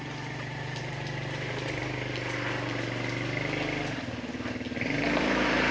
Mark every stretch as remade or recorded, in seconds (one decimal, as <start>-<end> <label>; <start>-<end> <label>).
0.0-1.8 remade; 1.8-5.2 recorded; 5.2-5.7 remade